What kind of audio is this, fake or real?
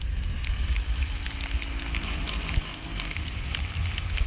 real